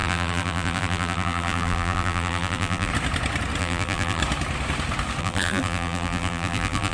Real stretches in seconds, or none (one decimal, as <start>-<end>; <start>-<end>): 2.9-3.6; 4.2-5.2